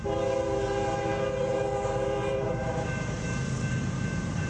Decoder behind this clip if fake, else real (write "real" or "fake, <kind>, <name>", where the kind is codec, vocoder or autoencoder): fake, vocoder, BigVGAN v2